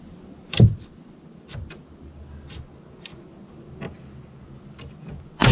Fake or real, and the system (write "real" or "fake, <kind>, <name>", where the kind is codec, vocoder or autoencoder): real